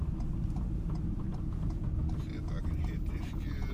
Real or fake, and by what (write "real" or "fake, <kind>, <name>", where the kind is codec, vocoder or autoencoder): real